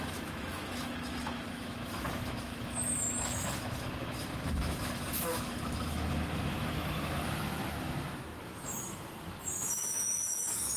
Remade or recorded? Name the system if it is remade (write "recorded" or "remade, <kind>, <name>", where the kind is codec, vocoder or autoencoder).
remade, autoencoder, DAC-VAE